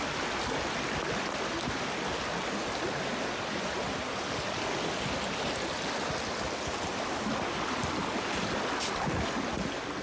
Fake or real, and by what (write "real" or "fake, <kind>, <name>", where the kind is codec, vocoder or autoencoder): real